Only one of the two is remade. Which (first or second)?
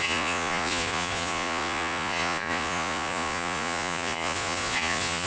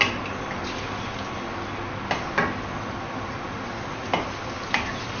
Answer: first